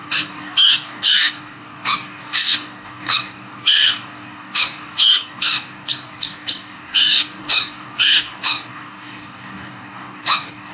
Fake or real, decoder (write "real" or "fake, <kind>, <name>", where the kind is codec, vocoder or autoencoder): fake, codec, DAC